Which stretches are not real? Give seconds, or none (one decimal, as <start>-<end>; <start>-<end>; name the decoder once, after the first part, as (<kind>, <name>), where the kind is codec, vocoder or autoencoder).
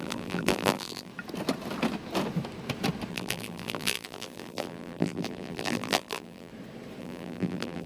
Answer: 0.0-1.1 (vocoder, BigVGAN v2); 3.1-6.5; 7.0-7.9